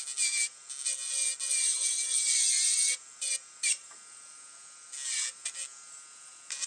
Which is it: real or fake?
real